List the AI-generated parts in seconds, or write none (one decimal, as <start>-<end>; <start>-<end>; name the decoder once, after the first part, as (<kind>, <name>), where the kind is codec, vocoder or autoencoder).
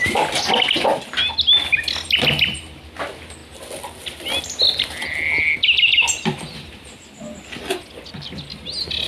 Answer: none